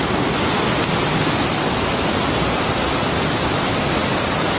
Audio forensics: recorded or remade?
recorded